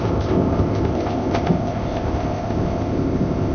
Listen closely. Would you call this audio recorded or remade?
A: remade